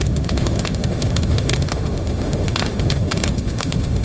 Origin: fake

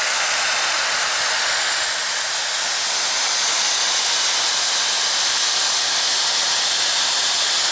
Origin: real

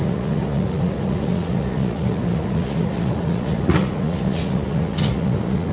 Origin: fake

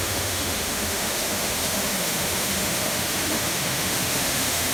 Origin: fake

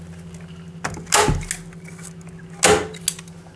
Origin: real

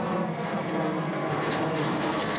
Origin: fake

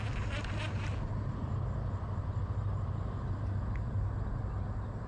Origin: real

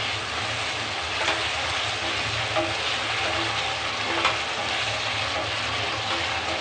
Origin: real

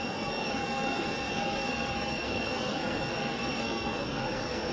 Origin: fake